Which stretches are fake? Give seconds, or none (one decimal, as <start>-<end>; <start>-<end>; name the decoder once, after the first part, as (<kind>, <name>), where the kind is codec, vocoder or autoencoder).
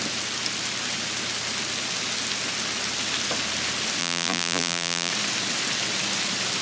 4.0-5.1 (vocoder, BigVGAN v2)